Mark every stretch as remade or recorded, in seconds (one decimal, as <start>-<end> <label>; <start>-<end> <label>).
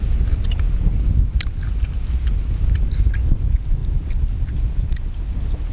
0.0-5.7 recorded